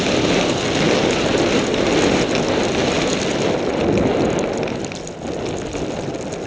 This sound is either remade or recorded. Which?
recorded